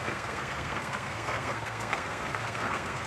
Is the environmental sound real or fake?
fake